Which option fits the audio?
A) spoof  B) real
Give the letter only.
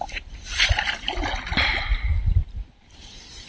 A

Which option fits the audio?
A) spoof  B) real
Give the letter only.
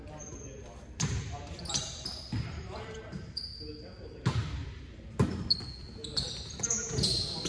B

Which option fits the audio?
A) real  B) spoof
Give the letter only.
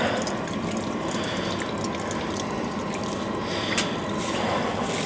A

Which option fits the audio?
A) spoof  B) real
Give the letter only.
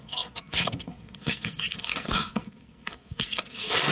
A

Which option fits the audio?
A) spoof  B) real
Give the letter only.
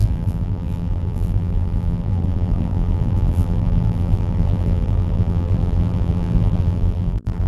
A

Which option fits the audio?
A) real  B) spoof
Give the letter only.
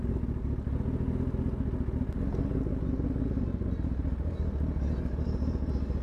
A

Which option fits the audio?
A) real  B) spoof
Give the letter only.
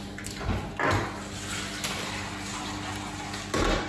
A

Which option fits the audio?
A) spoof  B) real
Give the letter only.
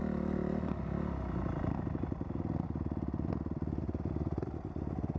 B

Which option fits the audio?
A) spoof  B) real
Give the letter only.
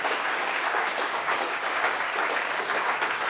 A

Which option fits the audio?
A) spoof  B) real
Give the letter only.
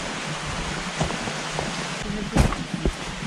B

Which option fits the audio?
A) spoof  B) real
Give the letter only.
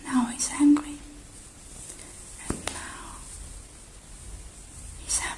B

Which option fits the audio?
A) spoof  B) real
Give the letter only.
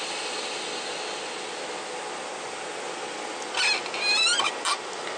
B